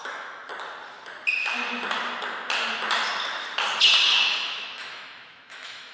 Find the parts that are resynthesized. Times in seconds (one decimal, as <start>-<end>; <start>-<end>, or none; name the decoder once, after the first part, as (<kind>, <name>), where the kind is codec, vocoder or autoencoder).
0.0-0.5 (autoencoder, DAC-VAE); 4.0-5.9